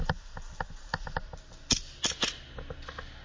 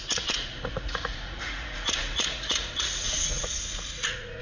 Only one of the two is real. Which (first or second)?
first